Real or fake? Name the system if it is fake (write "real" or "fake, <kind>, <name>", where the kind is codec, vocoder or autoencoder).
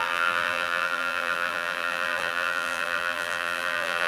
fake, vocoder, BigVGAN v2